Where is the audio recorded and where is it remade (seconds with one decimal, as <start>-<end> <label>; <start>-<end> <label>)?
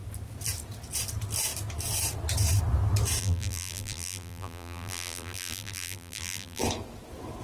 0.0-3.2 recorded; 3.2-6.6 remade; 6.6-7.4 recorded